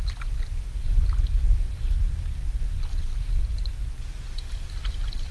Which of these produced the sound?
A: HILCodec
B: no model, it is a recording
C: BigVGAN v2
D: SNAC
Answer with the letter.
B